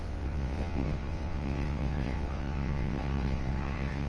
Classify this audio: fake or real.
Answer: fake